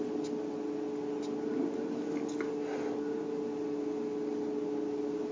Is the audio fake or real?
real